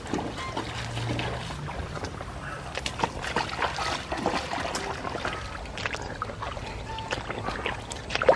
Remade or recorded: recorded